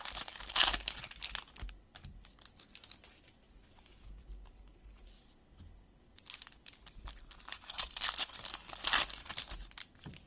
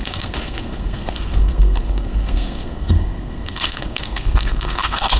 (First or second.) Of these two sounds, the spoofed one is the second